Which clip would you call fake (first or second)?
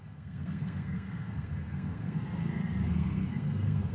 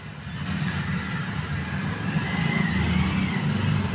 first